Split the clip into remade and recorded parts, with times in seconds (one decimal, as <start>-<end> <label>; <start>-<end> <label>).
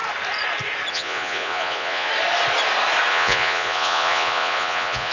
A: 0.0-0.9 recorded; 0.9-2.1 remade; 2.1-3.1 recorded; 3.1-5.1 remade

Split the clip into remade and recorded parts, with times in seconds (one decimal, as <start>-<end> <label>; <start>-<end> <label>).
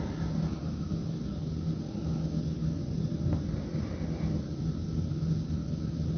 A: 0.0-6.2 recorded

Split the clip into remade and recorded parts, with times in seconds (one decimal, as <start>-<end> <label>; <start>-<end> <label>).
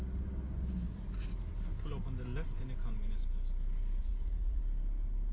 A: 0.0-4.0 recorded; 4.0-4.6 remade; 4.6-5.3 recorded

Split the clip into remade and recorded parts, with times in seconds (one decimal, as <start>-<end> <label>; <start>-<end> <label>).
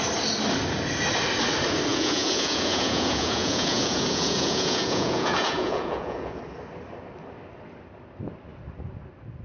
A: 0.0-1.9 recorded; 1.9-6.4 remade; 6.4-9.4 recorded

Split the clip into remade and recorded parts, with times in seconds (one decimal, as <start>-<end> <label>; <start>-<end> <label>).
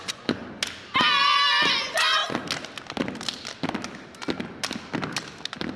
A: 0.0-0.4 remade; 0.4-1.7 recorded; 1.7-2.2 remade; 2.2-5.8 recorded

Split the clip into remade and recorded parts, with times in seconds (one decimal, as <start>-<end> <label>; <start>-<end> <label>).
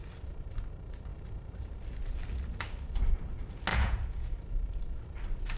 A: 0.0-3.7 recorded; 3.7-4.3 remade; 4.3-5.6 recorded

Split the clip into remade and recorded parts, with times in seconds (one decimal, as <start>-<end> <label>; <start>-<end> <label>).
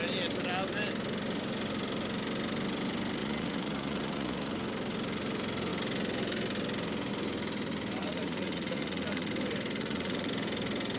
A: 0.0-3.2 recorded; 3.2-4.5 remade; 4.5-8.0 recorded; 8.0-9.3 remade; 9.3-9.8 recorded; 9.8-10.3 remade; 10.3-11.0 recorded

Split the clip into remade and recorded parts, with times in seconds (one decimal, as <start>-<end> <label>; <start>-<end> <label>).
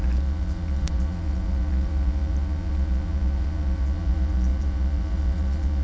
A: 0.0-5.8 remade